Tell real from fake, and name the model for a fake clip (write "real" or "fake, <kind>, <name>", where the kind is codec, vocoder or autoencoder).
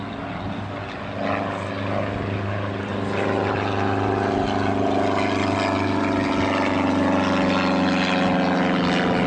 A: real